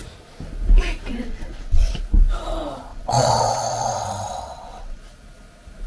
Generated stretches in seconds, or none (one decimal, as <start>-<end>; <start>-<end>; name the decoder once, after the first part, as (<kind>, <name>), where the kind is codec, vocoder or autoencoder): 1.1-1.9 (vocoder, WaveNeXt); 2.9-5.0